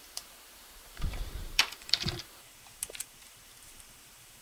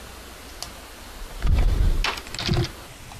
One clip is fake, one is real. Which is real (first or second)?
second